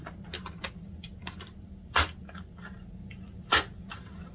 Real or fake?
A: real